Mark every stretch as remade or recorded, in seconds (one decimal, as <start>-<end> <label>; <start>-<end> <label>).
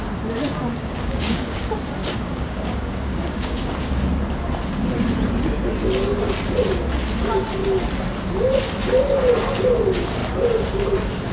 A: 0.0-0.4 recorded; 0.4-1.4 remade; 1.4-2.0 recorded; 2.0-4.0 remade; 4.0-11.3 recorded